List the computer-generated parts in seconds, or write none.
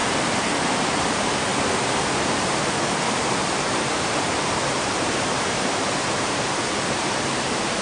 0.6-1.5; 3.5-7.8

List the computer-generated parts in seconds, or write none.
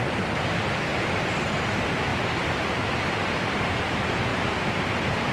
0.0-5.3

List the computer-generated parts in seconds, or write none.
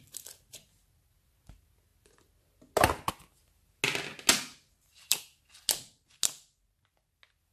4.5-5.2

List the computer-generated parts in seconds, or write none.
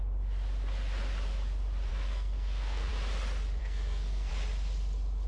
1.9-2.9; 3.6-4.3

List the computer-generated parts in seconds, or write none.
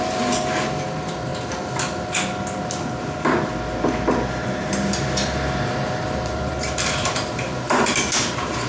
0.0-1.3; 4.4-8.7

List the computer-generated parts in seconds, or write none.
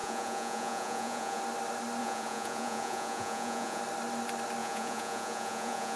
0.0-1.4; 2.0-3.8; 4.6-6.0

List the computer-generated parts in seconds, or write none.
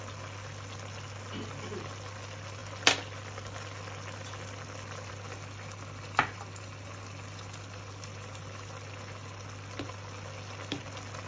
none